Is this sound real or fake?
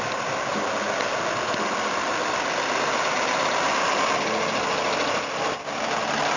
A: real